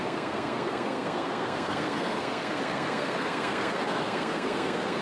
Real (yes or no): no